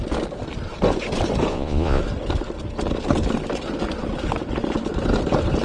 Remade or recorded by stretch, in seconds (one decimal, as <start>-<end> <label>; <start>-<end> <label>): 0.0-1.5 recorded; 1.5-2.0 remade; 2.0-5.6 recorded